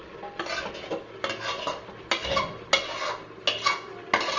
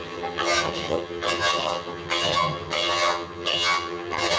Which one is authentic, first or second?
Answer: first